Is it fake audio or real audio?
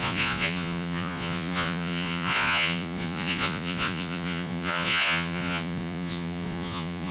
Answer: fake